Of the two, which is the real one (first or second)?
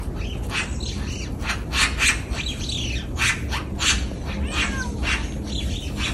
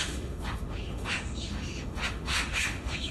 first